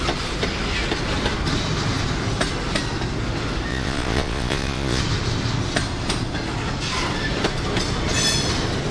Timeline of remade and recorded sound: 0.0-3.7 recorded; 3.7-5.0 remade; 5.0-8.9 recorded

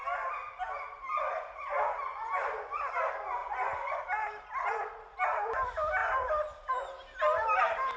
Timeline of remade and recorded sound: 0.0-2.1 recorded; 2.1-2.8 remade; 2.8-3.4 recorded; 3.4-4.0 remade; 4.0-8.0 recorded

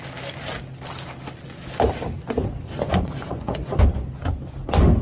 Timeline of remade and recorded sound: 0.0-2.7 recorded; 2.7-3.8 remade; 3.8-5.0 recorded

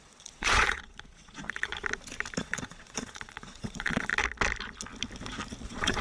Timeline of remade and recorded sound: 0.0-1.7 remade; 1.7-2.4 recorded; 2.4-4.1 remade; 4.1-5.6 recorded; 5.6-6.0 remade

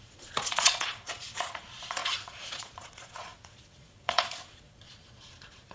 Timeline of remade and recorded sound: 0.0-5.7 remade